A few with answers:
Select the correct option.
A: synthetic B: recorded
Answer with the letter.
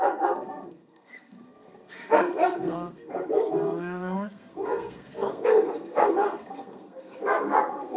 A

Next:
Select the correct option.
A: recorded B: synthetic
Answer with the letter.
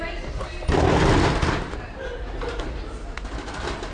A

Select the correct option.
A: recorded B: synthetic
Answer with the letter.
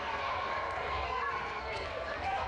B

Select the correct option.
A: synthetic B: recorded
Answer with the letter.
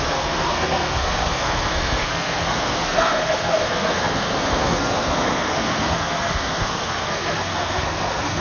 A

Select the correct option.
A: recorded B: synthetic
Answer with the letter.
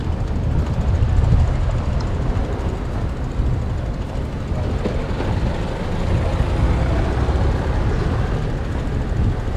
A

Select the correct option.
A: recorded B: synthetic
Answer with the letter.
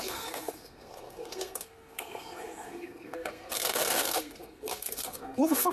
B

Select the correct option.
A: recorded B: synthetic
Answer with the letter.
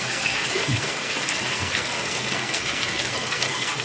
B